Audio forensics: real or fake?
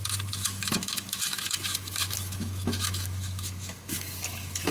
fake